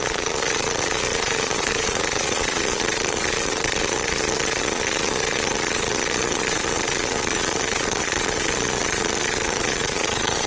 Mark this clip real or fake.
fake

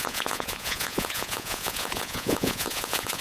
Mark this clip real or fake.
fake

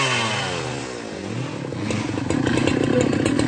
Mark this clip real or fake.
real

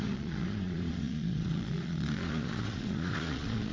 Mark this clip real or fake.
fake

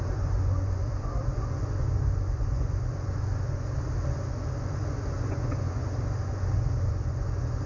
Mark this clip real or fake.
fake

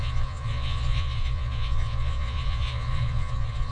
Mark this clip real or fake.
fake